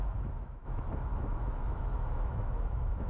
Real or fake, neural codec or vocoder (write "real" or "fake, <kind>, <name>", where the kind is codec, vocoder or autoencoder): fake, autoencoder, DAC-VAE